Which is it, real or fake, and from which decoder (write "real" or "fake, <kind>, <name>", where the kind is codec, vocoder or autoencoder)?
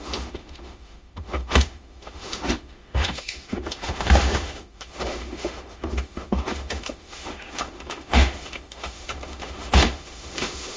fake, autoencoder, DAC-VAE